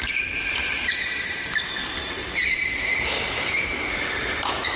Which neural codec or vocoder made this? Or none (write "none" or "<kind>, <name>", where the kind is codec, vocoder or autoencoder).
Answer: vocoder, BigVGAN v2